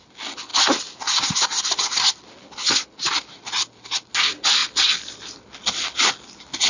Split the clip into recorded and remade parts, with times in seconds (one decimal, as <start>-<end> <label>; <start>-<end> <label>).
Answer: 0.0-6.7 recorded